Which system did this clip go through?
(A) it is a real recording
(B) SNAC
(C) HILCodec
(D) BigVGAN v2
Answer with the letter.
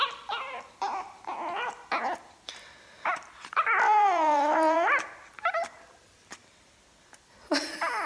D